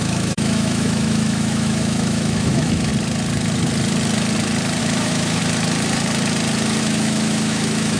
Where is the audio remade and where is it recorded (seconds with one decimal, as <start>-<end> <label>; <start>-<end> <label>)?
0.0-2.9 remade; 2.9-4.8 recorded; 4.8-5.4 remade; 5.4-6.8 recorded; 6.8-8.0 remade